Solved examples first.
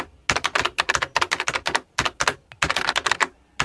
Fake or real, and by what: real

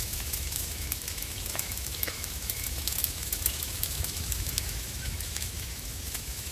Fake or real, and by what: fake, autoencoder, DAC-VAE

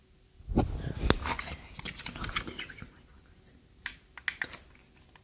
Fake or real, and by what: real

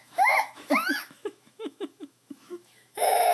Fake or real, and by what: fake, autoencoder, DAC-VAE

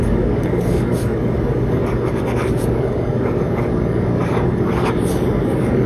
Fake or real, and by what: fake, codec, DAC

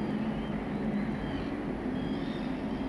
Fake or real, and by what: real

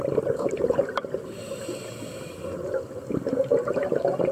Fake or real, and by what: real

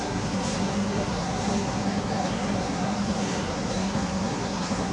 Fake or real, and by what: fake, codec, SNAC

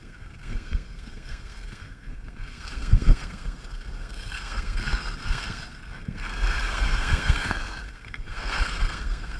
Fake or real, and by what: fake, codec, SNAC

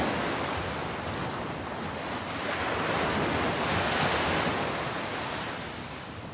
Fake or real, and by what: real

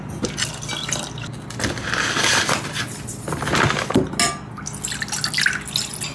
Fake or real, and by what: real